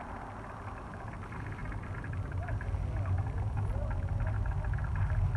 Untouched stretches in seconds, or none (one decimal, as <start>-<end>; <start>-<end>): 0.0-5.4